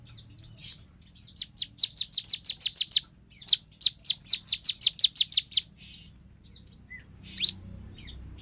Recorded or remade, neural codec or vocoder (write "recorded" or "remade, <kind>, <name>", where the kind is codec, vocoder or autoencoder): recorded